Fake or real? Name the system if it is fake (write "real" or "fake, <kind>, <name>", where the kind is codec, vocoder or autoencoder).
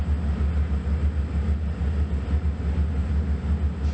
real